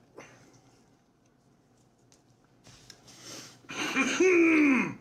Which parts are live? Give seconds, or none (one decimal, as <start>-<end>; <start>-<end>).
0.0-3.0; 4.2-5.0